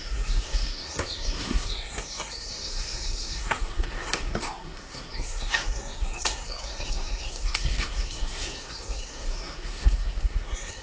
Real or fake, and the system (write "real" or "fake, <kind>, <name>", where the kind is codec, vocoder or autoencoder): fake, codec, SNAC